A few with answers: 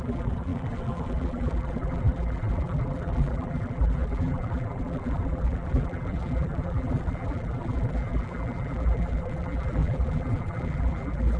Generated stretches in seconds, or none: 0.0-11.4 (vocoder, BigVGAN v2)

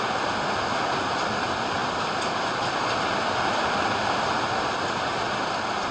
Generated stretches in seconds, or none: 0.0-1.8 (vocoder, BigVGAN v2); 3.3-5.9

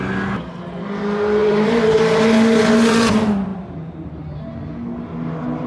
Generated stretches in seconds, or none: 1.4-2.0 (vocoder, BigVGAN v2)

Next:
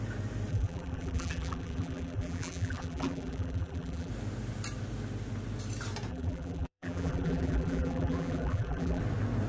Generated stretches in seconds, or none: 0.5-4.1 (vocoder, BigVGAN v2); 6.1-9.0

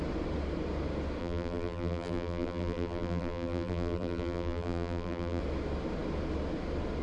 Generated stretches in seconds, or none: 1.2-5.4 (vocoder, BigVGAN v2)

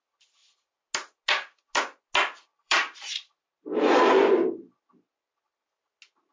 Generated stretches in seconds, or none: 2.5-4.3 (vocoder, BigVGAN v2)